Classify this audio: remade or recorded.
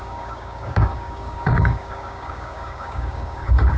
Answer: remade